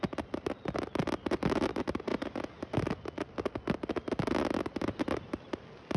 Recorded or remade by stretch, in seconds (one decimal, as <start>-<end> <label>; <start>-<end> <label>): 0.0-6.0 recorded